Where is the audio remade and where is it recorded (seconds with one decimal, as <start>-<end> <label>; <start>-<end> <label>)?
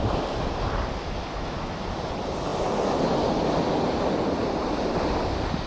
0.0-1.2 recorded; 1.2-1.8 remade; 1.8-5.7 recorded